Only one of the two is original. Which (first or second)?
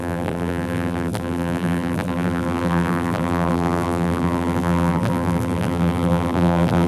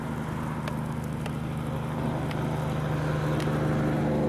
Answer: second